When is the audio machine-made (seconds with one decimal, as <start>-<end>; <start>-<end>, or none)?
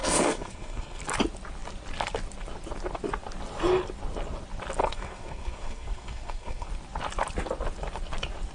0.0-1.0; 4.8-6.7